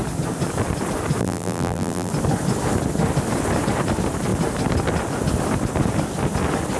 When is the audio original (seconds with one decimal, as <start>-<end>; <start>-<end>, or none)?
0.0-1.2; 2.1-6.8